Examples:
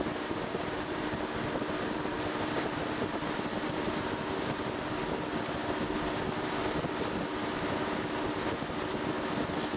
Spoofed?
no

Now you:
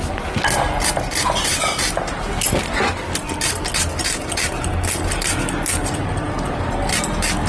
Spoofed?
no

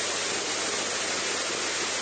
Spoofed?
no